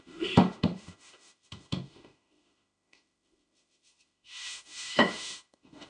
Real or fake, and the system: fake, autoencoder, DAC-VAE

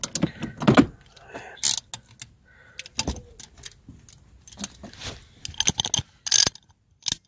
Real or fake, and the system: real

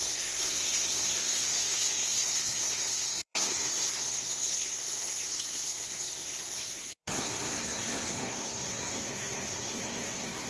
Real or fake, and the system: fake, codec, SNAC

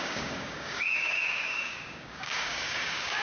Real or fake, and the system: fake, codec, DAC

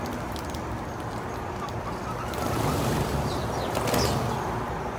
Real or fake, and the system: real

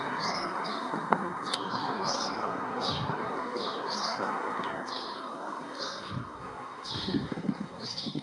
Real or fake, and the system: fake, codec, SNAC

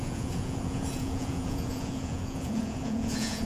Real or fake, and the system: fake, vocoder, Vocos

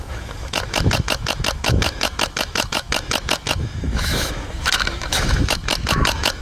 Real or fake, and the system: fake, autoencoder, DAC-VAE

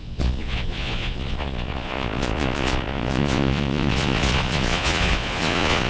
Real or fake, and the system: fake, vocoder, Vocos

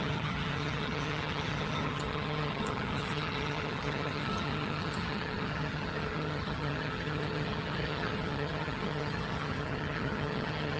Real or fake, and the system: fake, vocoder, HiFi-GAN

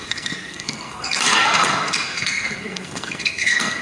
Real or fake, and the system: fake, codec, SNAC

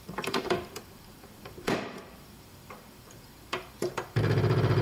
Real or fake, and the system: fake, vocoder, BigVGAN v2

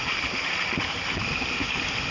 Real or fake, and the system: real